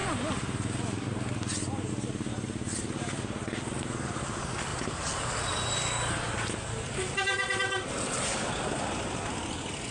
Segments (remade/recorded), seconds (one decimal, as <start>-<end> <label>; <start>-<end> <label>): 0.0-9.9 recorded